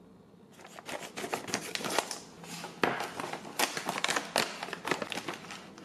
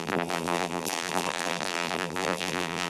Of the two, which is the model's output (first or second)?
second